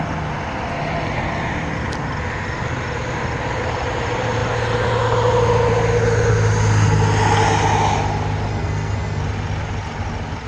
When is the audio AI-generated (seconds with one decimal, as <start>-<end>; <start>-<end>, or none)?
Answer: 8.5-9.2